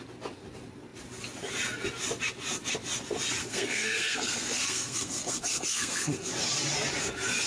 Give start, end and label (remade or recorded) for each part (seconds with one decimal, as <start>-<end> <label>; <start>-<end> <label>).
0.0-3.4 recorded; 3.4-6.3 remade; 6.3-7.5 recorded